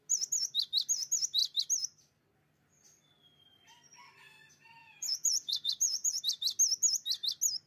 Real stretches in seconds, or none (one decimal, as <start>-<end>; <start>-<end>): 0.0-4.8; 6.2-7.7